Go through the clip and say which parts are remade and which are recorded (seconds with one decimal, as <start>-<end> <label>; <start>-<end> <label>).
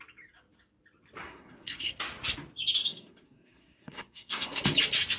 0.0-1.2 recorded; 1.2-1.9 remade; 1.9-2.8 recorded; 2.8-4.6 remade; 4.6-5.2 recorded